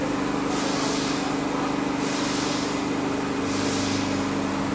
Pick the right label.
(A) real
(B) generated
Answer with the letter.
A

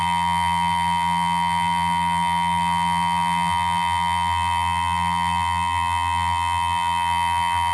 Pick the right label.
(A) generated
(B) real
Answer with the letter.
A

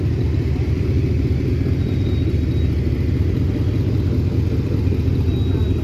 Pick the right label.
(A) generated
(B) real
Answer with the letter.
B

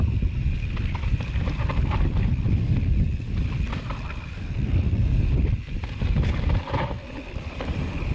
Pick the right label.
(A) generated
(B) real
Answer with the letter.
A